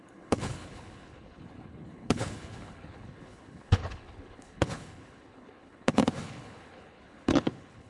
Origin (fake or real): fake